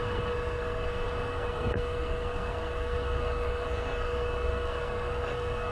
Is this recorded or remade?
remade